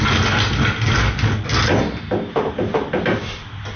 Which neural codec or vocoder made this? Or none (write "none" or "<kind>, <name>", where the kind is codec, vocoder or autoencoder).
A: none